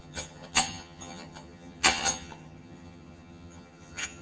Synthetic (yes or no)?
yes